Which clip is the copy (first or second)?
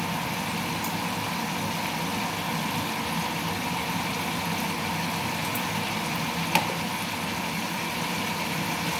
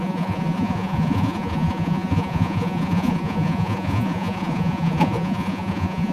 second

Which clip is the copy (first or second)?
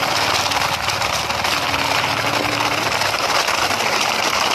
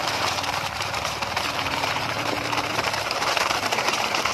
second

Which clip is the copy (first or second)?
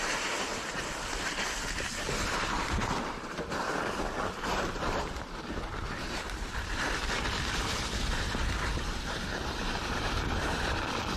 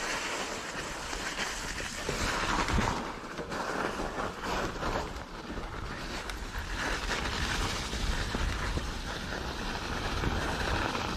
first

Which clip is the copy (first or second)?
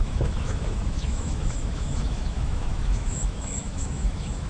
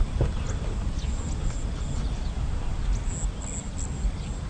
first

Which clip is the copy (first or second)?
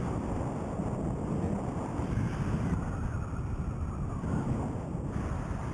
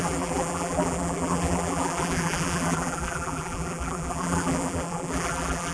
second